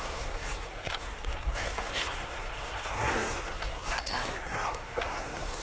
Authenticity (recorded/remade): remade